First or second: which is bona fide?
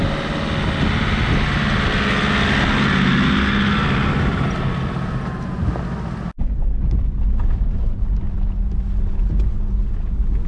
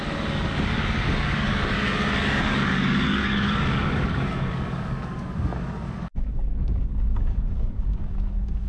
first